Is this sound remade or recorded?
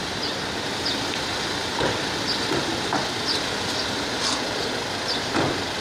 recorded